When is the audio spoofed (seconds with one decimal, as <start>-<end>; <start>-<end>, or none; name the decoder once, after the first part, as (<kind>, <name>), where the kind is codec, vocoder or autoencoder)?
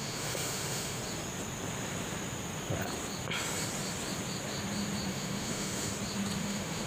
0.0-1.0 (autoencoder, DAC-VAE); 5.1-5.9; 6.4-6.9